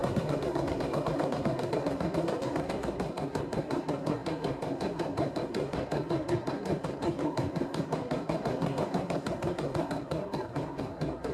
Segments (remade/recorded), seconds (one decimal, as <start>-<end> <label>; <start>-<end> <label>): 0.0-11.3 remade